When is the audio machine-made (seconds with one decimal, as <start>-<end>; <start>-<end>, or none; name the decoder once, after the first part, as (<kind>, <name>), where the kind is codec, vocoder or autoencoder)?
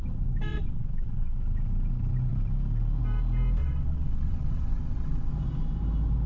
0.5-1.3 (vocoder, WaveNeXt); 3.6-5.3